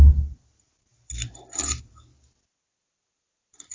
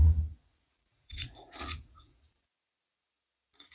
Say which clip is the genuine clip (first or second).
first